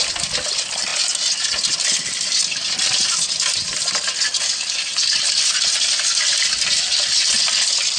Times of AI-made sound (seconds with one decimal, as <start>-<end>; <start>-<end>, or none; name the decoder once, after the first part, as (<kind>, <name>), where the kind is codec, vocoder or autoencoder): none